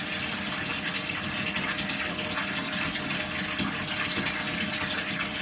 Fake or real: real